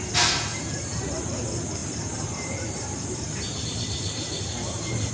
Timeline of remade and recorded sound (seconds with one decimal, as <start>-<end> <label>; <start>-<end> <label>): 0.0-0.5 recorded; 0.5-1.2 remade; 1.2-1.8 recorded; 1.8-5.1 remade